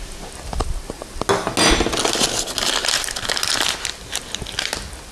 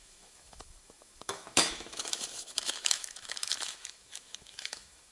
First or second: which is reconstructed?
second